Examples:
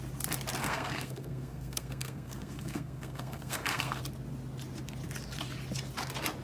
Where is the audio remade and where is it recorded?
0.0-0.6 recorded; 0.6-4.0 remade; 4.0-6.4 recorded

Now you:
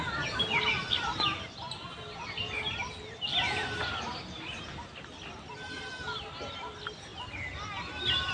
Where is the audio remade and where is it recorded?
0.0-8.3 recorded

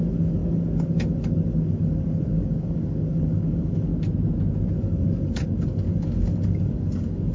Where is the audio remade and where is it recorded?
0.0-3.9 remade; 3.9-4.7 recorded; 4.7-7.3 remade

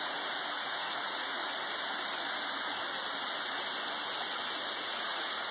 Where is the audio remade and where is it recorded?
0.0-1.4 remade; 1.4-4.7 recorded; 4.7-5.5 remade

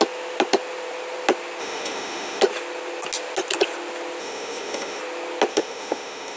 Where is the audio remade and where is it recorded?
0.0-1.6 recorded; 1.6-2.4 remade; 2.4-4.2 recorded; 4.2-5.0 remade; 5.0-5.5 recorded; 5.5-6.4 remade

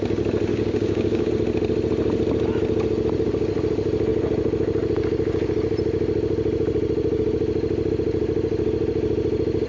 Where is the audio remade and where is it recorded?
0.0-0.5 recorded; 0.5-1.3 remade; 1.3-9.7 recorded

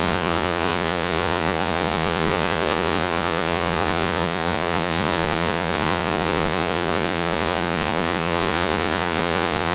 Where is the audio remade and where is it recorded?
0.0-9.7 remade